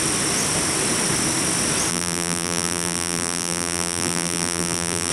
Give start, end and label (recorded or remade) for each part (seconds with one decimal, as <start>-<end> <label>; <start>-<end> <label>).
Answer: 0.0-1.9 recorded; 1.9-5.1 remade